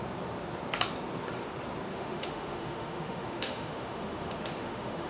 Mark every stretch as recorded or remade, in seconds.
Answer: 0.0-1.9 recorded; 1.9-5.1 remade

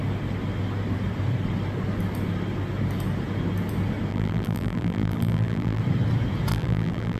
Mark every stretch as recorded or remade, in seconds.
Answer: 0.0-4.1 recorded; 4.1-5.8 remade; 5.8-6.5 recorded; 6.5-7.2 remade

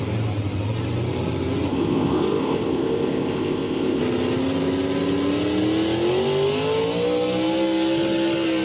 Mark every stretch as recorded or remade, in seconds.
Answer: 0.0-1.7 recorded; 1.7-4.0 remade; 4.0-8.6 recorded

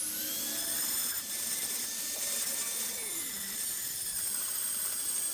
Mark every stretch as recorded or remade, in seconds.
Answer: 0.0-1.0 recorded; 1.0-2.2 remade; 2.2-5.3 recorded